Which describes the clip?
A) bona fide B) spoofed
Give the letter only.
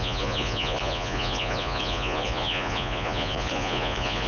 B